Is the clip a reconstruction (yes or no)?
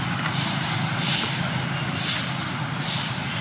no